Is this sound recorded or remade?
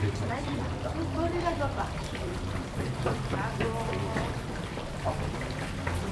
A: recorded